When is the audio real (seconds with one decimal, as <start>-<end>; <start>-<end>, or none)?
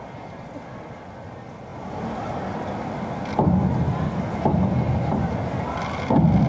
0.0-6.5